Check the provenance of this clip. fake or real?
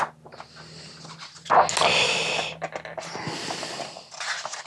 real